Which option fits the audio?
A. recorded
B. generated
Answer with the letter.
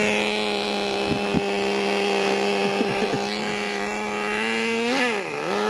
A